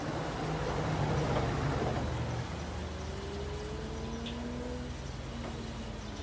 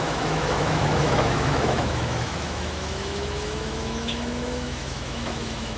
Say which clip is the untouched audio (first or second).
first